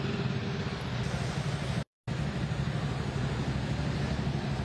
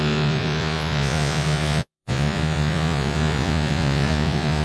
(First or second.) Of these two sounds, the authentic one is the first